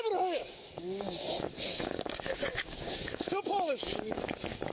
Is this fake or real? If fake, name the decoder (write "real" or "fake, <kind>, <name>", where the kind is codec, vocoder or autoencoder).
fake, codec, DAC